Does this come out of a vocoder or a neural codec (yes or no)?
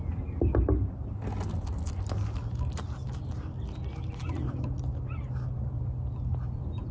no